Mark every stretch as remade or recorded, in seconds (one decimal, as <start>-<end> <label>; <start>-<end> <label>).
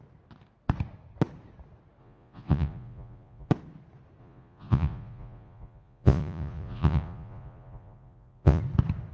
0.0-2.0 recorded; 2.0-3.5 remade; 3.5-4.2 recorded; 4.2-8.6 remade; 8.6-9.1 recorded